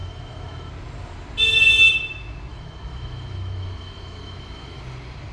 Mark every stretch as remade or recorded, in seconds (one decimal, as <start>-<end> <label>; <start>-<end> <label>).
0.0-0.7 remade; 0.7-2.5 recorded; 2.5-4.8 remade; 4.8-5.3 recorded